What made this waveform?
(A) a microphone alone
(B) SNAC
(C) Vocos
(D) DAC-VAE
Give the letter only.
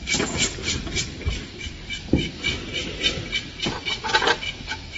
A